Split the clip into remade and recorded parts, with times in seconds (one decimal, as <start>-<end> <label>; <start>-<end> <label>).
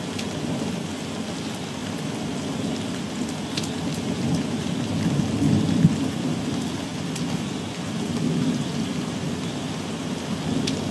0.0-10.9 recorded